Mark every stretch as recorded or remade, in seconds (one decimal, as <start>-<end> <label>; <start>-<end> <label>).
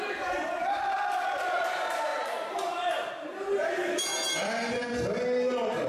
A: 0.0-1.0 remade; 1.0-2.1 recorded; 2.1-3.1 remade; 3.1-5.9 recorded